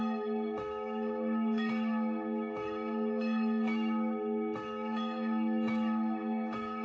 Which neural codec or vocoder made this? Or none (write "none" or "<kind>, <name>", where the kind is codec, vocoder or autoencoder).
autoencoder, DAC-VAE